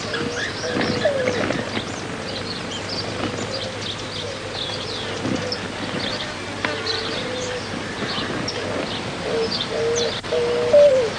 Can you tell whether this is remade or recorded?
recorded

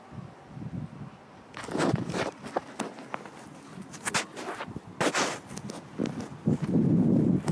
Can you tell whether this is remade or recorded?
recorded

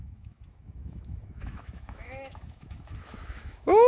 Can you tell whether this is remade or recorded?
remade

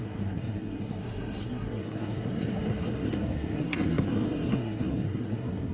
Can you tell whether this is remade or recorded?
remade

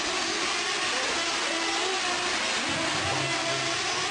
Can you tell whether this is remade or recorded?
recorded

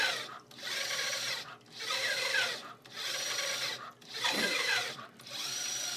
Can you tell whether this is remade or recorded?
recorded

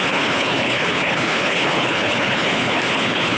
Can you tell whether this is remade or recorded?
remade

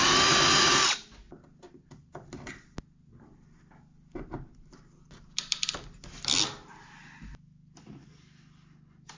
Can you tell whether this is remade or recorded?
recorded